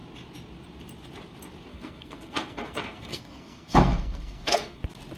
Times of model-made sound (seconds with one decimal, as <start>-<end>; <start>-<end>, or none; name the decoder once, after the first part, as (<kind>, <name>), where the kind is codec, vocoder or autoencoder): 1.7-4.8 (codec, SNAC)